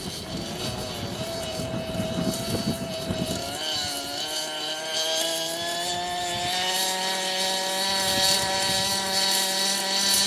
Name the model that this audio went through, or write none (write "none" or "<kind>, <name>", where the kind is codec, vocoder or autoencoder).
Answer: none